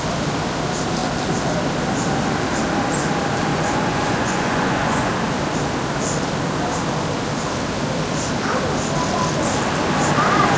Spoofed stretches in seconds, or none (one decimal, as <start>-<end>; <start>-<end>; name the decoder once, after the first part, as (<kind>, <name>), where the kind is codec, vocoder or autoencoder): 3.5-5.1 (vocoder, Vocos)